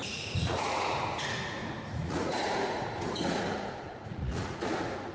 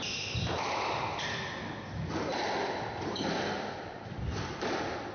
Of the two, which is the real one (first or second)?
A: second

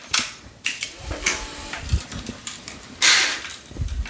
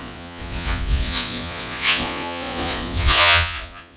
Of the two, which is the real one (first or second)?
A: first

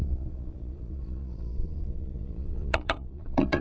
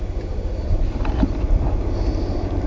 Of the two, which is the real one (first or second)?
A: second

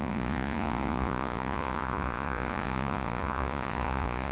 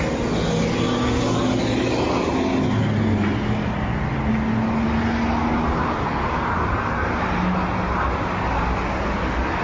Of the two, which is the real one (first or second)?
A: second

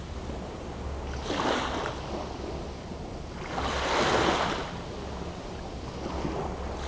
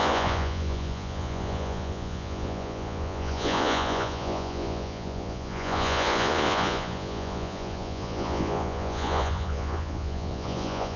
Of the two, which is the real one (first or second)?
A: first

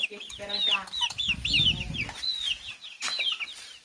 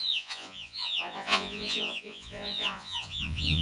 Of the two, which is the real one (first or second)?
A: first